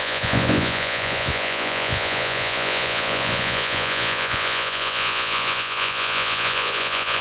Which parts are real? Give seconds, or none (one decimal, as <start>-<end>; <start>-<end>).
none

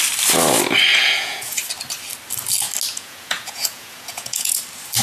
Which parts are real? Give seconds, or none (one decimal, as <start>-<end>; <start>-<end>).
0.0-0.9; 1.6-2.9; 4.6-5.0

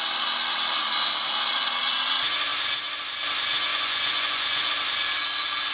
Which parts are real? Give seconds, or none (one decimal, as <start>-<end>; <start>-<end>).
0.0-3.7; 4.7-5.7

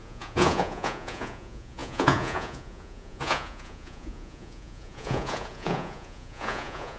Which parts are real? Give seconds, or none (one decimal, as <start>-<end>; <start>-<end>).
none

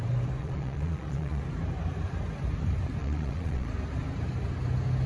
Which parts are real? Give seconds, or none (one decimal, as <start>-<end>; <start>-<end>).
0.0-0.4; 1.4-3.0; 3.7-5.1

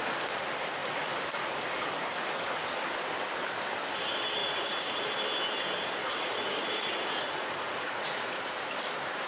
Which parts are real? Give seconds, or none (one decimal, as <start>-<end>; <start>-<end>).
0.0-4.4; 5.1-6.0; 8.5-9.3